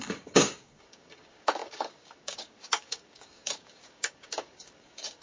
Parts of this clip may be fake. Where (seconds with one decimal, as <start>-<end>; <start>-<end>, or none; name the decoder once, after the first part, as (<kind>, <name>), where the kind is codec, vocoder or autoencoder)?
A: 0.0-5.2 (codec, DAC)